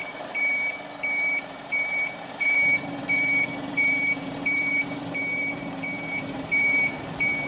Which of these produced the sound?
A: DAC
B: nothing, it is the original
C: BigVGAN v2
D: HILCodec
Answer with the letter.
C